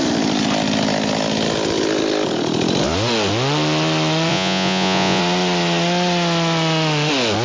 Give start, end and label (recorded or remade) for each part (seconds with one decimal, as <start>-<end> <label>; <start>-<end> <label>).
0.0-4.3 recorded; 4.3-5.2 remade; 5.2-7.4 recorded